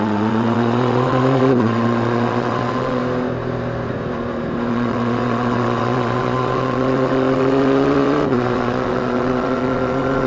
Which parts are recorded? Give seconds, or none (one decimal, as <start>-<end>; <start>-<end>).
3.0-4.7